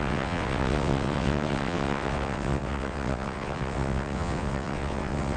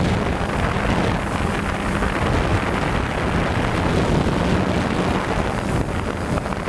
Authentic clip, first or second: second